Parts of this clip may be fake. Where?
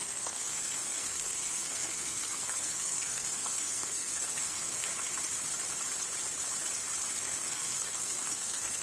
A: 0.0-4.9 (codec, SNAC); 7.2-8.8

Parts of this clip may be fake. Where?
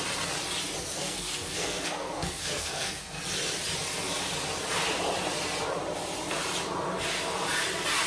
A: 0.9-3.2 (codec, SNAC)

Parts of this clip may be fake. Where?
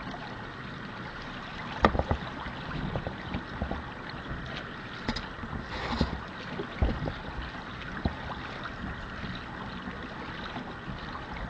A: none